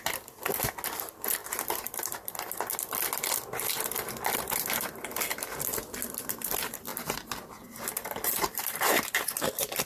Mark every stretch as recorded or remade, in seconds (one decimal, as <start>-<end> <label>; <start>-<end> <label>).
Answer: 0.0-9.9 recorded